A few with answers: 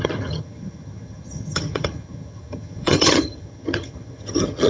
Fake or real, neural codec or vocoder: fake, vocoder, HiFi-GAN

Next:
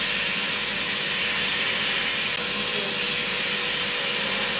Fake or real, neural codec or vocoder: real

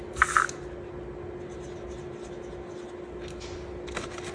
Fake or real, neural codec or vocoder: real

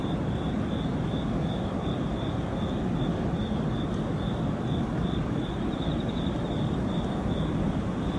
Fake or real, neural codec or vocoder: real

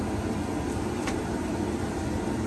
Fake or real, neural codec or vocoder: real